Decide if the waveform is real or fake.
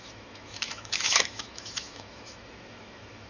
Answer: fake